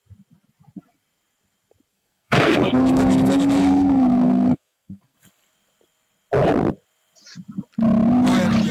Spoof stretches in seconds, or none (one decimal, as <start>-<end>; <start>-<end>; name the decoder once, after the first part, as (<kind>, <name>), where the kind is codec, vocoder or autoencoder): 1.9-5.5 (codec, SNAC)